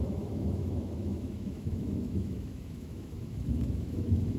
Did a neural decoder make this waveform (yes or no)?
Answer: yes